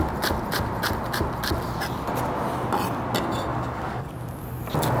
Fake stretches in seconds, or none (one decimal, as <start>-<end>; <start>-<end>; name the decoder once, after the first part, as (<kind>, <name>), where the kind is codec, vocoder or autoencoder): 3.5-4.1 (codec, DAC)

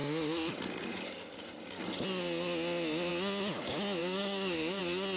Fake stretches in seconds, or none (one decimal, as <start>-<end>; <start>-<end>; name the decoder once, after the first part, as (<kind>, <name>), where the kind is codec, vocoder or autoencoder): 4.0-4.8 (codec, DAC)